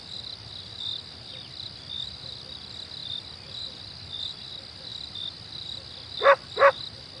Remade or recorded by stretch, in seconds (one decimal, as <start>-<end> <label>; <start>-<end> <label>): 0.0-7.2 recorded